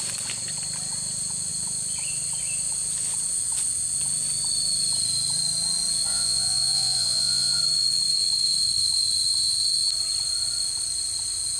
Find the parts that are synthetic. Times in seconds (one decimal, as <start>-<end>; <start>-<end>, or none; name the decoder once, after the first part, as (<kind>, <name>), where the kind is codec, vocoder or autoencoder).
6.1-7.6 (vocoder, Vocos)